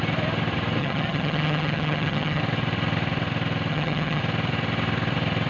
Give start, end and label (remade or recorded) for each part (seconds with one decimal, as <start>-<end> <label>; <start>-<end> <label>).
0.0-0.8 recorded; 0.8-2.4 remade; 2.4-3.7 recorded; 3.7-4.2 remade; 4.2-5.5 recorded